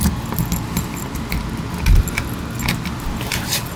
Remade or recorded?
recorded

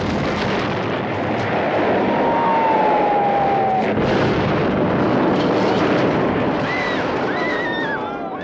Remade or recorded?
recorded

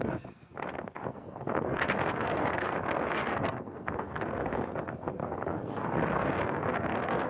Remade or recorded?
remade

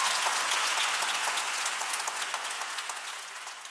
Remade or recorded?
remade